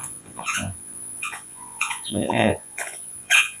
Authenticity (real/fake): fake